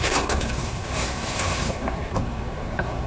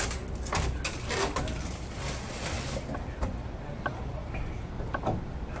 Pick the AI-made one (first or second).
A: first